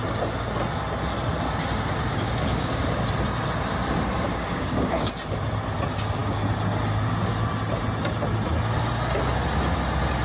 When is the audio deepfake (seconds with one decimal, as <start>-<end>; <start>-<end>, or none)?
2.1-2.8; 4.3-5.1